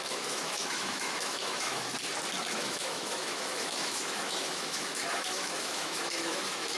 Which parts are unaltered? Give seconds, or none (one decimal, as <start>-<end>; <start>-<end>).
1.9-2.5